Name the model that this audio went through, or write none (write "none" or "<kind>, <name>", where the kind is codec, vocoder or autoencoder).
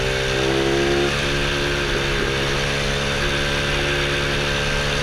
none